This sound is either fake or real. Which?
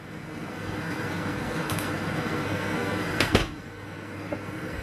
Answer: fake